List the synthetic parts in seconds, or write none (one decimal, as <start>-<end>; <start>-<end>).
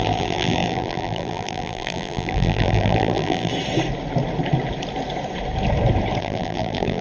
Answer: 0.0-3.5; 6.2-7.0